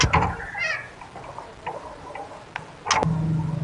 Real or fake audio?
real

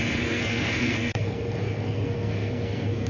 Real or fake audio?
fake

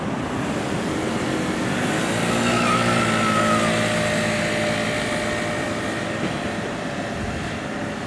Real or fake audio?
real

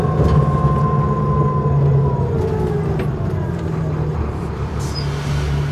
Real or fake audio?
real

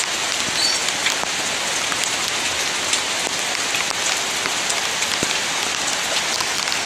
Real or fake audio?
real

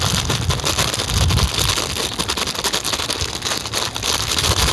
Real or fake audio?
real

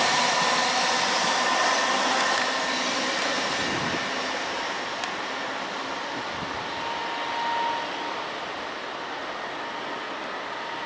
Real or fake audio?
real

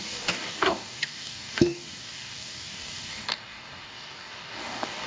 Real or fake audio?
fake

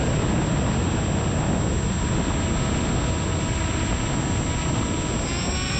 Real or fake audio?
real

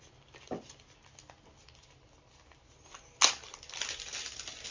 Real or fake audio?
real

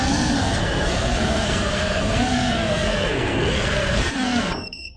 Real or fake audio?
fake